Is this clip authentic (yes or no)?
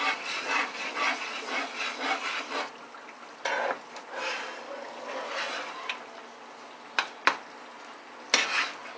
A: yes